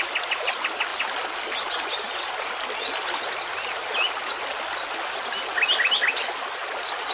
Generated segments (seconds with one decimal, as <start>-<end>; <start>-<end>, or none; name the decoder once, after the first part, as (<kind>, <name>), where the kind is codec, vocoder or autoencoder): none

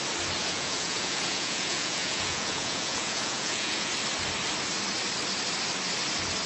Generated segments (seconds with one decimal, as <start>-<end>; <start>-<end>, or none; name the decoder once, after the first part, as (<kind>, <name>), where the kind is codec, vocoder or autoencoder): 0.4-3.9 (vocoder, Vocos)

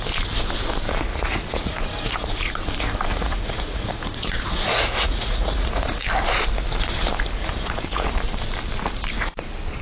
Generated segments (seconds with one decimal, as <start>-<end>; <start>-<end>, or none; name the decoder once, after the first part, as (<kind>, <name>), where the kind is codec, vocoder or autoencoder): 1.1-2.7 (vocoder, Vocos); 3.1-6.0; 7.4-8.2

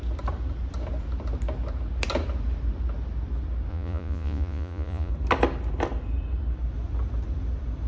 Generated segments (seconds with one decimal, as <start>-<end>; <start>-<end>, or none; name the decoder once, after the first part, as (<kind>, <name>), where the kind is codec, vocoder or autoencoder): 3.7-5.1 (vocoder, Vocos)

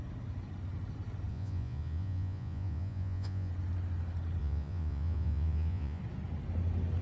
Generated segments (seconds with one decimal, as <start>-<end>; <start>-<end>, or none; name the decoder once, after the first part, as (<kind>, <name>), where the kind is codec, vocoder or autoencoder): 1.3-3.5 (vocoder, Vocos); 4.4-6.0

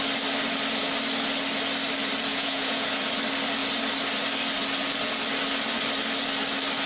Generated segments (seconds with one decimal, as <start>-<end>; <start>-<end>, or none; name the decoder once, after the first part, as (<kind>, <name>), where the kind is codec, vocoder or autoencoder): 2.3-3.1 (vocoder, Vocos)

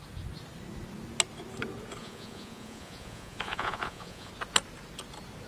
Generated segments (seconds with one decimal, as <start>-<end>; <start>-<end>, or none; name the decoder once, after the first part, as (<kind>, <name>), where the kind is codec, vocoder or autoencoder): 2.0-4.3 (vocoder, Vocos)